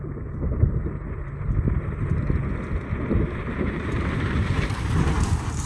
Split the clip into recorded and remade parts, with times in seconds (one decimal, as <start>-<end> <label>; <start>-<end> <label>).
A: 0.0-0.6 remade; 0.6-3.1 recorded; 3.1-5.7 remade